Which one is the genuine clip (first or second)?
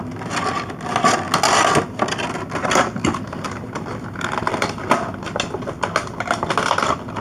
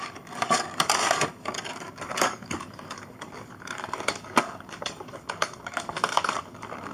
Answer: first